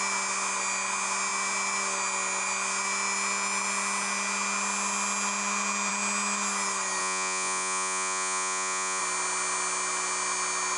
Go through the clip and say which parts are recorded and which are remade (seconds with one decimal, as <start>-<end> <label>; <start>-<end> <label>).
0.0-7.0 recorded; 7.0-9.0 remade; 9.0-10.8 recorded